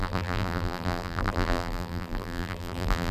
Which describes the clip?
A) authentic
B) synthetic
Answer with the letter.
B